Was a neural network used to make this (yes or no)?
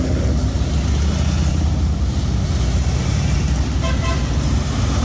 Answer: no